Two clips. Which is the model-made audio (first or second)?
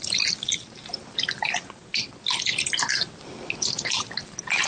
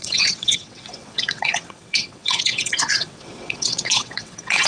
second